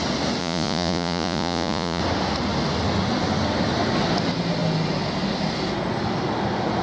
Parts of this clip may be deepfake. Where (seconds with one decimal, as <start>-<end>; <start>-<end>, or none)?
0.4-2.0